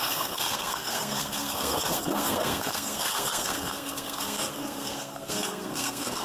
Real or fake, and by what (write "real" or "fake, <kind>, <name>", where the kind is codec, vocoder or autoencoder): fake, codec, SNAC